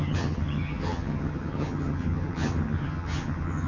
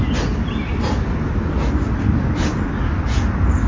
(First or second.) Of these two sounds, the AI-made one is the first